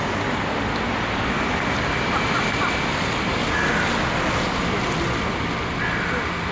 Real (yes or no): yes